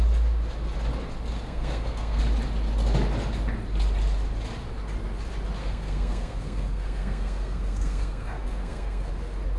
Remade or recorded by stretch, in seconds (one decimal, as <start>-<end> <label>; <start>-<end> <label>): 0.0-1.3 recorded; 1.3-2.2 remade; 2.2-5.6 recorded; 5.6-9.1 remade; 9.1-9.6 recorded